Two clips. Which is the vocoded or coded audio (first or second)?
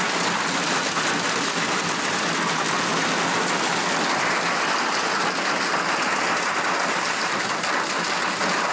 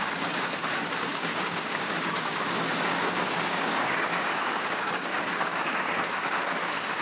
second